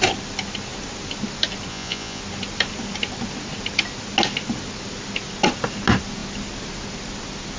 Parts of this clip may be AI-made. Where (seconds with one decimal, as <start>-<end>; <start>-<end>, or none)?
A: 1.7-2.2